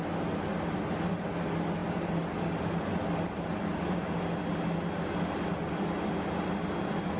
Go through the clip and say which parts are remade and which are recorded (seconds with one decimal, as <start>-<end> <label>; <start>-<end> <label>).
0.0-1.8 recorded; 1.8-4.2 remade; 4.2-7.2 recorded